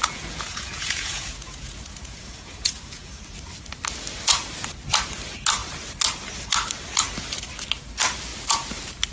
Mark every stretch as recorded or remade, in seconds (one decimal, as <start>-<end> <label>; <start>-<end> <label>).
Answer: 0.0-3.2 remade; 3.2-9.1 recorded